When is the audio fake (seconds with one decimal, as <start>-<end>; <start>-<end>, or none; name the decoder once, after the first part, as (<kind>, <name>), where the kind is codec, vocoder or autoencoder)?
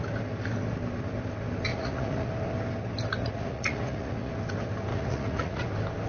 1.7-2.3 (vocoder, Vocos); 3.2-4.3; 4.9-5.6